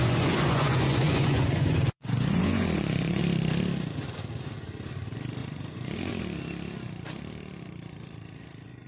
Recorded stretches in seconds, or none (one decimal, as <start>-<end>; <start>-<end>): 3.2-5.4; 6.2-8.9